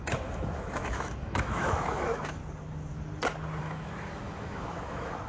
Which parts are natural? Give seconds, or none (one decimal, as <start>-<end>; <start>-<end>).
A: 2.4-3.6